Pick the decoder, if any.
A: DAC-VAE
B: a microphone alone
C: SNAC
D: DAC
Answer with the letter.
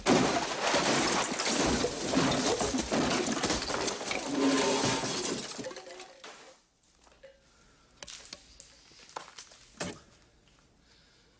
B